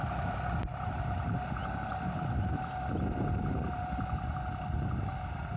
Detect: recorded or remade recorded